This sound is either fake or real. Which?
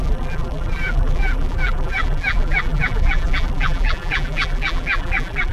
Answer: fake